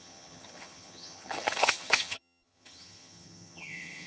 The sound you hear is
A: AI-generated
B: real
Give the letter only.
A